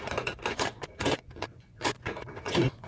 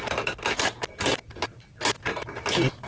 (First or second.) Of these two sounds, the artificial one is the first